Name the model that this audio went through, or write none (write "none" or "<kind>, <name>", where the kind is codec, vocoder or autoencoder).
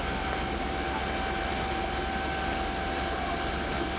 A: none